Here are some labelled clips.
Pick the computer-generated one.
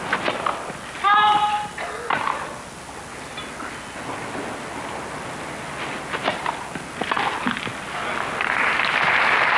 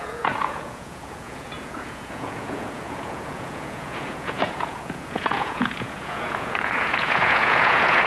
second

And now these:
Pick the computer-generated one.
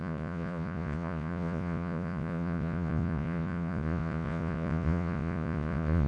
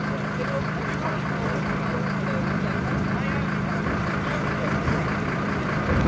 first